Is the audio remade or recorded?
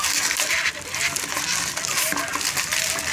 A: recorded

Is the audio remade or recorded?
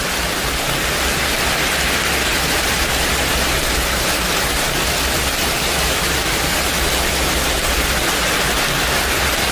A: recorded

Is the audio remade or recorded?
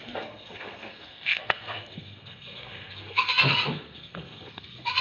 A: remade